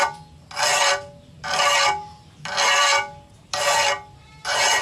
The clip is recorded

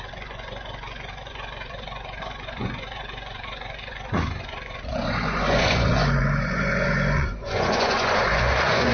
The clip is remade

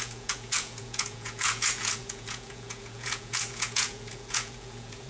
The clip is remade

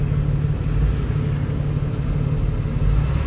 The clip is recorded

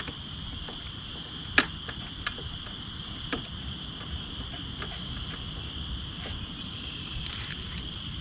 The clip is recorded